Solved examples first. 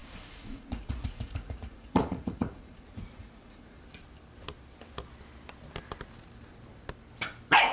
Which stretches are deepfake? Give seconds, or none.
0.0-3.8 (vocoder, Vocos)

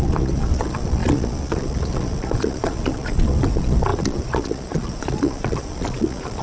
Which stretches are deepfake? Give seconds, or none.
0.0-6.4 (vocoder, Vocos)

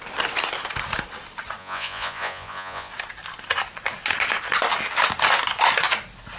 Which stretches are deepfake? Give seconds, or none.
1.6-2.9 (vocoder, Vocos)

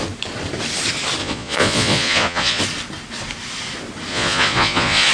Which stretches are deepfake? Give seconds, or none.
1.2-2.6 (vocoder, Vocos); 4.1-5.1

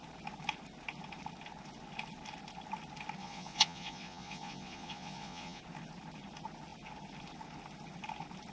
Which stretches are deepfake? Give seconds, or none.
3.2-5.6 (vocoder, Vocos)

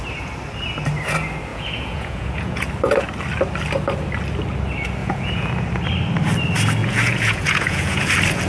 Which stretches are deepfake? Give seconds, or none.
1.5-2.7 (vocoder, Vocos); 5.0-5.5; 6.8-8.1

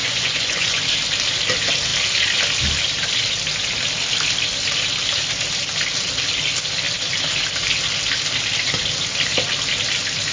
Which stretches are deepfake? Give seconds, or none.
0.0-0.8 (vocoder, Vocos)